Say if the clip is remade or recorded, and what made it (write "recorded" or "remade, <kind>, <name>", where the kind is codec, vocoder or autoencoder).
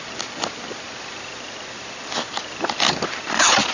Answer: recorded